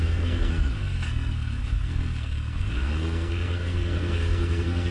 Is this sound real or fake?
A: fake